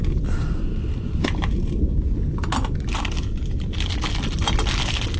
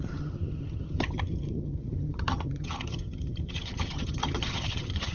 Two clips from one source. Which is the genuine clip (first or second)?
first